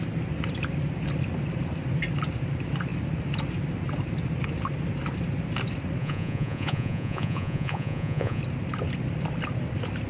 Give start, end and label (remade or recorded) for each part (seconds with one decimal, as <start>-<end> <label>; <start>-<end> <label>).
0.0-6.0 recorded; 6.0-8.4 remade; 8.4-10.1 recorded